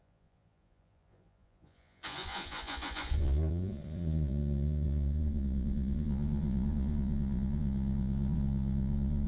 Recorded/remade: remade